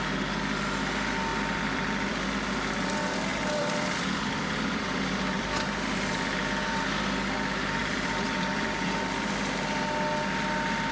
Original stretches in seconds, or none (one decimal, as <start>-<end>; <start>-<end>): 0.0-1.3; 2.1-3.3; 5.8-7.8; 9.4-10.9